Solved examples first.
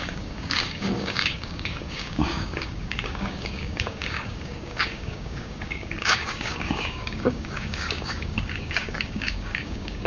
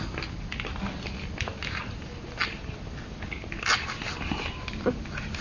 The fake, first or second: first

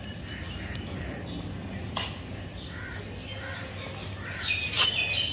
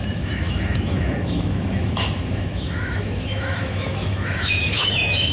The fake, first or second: second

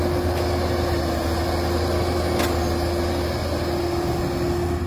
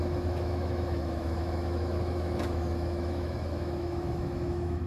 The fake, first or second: second